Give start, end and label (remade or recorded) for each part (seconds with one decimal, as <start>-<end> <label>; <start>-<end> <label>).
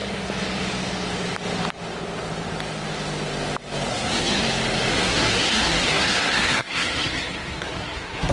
0.0-3.9 recorded; 3.9-4.4 remade; 4.4-4.9 recorded; 4.9-8.3 remade